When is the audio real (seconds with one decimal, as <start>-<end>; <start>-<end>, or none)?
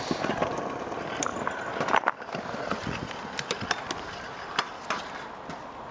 0.0-5.9